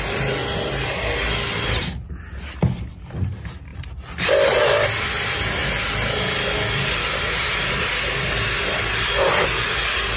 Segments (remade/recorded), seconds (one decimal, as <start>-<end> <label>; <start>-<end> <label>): 0.0-10.2 recorded